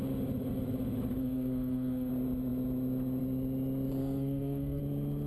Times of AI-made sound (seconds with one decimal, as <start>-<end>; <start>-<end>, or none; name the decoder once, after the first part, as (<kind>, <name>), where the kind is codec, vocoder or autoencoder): 1.2-2.1 (codec, SNAC); 4.0-4.8